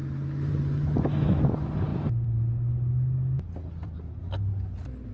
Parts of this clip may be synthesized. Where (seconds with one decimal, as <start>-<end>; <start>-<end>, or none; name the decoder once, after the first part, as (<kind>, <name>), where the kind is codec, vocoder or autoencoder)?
none